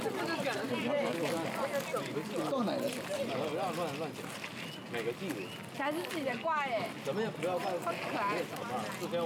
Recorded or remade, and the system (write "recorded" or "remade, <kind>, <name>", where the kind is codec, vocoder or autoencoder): recorded